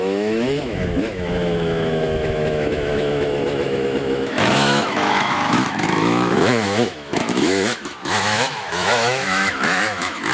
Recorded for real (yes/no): no